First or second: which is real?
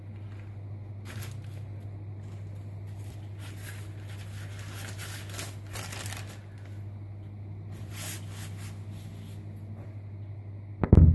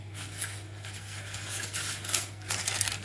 first